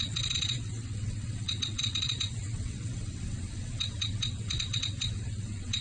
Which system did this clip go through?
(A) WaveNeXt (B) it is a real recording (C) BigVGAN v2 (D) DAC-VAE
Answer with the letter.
A